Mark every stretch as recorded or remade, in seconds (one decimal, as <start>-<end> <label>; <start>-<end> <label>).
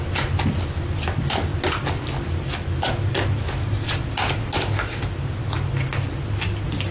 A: 0.0-6.9 recorded